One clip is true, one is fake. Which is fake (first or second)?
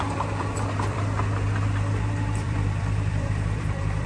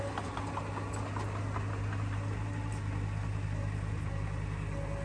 first